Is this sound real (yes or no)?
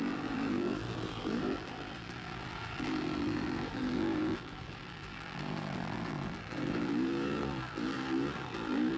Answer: no